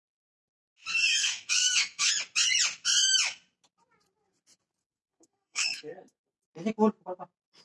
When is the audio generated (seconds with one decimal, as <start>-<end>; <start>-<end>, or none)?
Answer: 1.2-2.1; 4.8-6.4